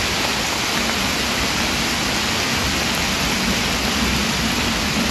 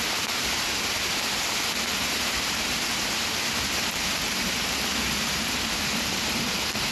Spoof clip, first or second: second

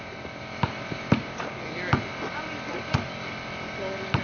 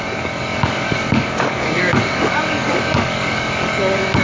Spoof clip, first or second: second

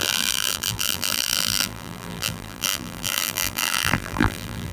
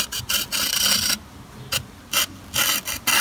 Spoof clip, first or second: first